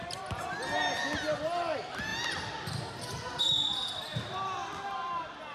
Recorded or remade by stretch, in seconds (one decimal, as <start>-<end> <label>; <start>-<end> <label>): 0.0-5.5 recorded